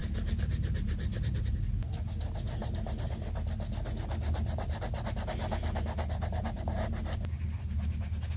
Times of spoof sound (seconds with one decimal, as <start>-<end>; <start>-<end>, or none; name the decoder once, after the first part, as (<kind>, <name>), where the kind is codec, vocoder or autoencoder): none